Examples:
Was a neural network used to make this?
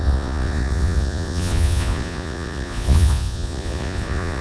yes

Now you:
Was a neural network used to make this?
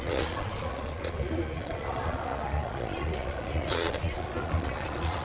yes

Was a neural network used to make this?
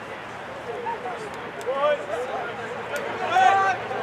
no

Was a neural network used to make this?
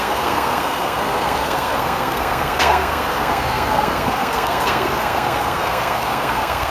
yes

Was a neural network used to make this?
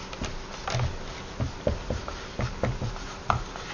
no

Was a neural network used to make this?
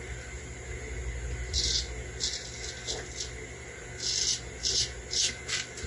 no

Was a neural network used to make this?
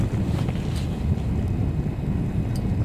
no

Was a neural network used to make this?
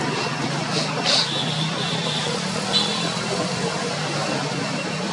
yes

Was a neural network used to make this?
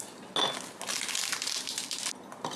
no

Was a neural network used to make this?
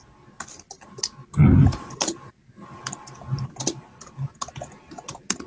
no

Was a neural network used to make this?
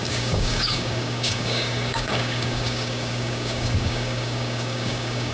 yes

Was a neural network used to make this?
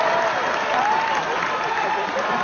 no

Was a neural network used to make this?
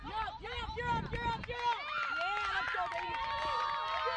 no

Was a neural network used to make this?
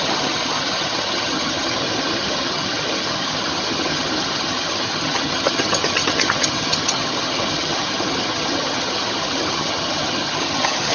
yes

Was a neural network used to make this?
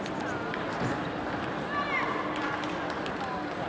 no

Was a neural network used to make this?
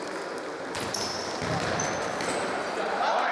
no